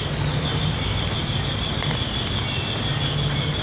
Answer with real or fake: real